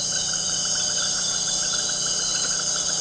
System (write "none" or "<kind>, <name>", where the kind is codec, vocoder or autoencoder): none